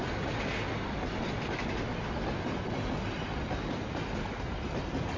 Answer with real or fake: real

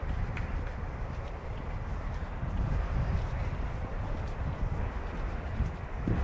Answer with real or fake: real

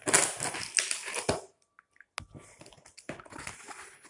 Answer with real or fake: real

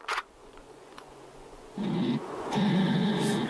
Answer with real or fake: fake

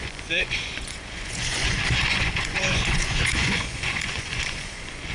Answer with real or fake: fake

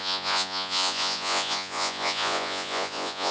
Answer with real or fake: fake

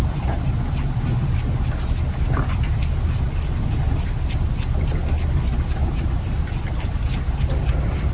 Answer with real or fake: real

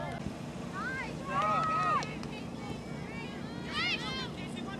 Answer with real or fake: real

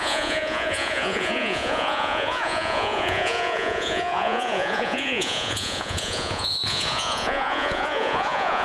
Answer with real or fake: fake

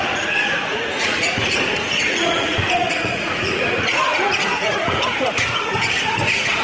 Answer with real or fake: fake